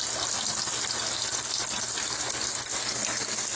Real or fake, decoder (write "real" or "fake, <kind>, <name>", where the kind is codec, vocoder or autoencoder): real